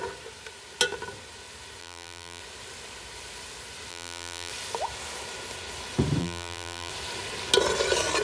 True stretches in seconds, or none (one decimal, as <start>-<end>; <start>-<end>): 0.0-1.8; 2.4-3.9; 4.5-6.2; 6.9-8.2